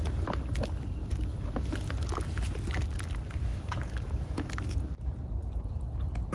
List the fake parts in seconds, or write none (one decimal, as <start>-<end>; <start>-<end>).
3.5-4.5